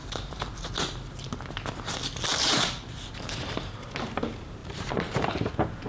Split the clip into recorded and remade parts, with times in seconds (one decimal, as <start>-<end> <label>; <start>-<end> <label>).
0.0-0.7 remade; 0.7-2.3 recorded; 2.3-2.8 remade; 2.8-4.6 recorded; 4.6-5.3 remade; 5.3-5.9 recorded